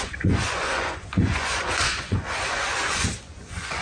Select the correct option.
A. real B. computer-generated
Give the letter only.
B